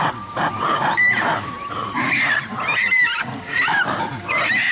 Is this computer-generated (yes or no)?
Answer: yes